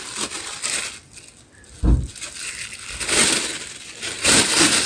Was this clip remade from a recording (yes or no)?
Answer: no